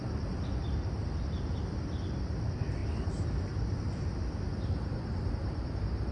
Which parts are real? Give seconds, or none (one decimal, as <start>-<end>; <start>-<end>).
0.0-6.1